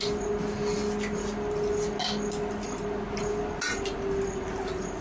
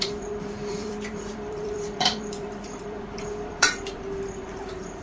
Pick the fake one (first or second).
second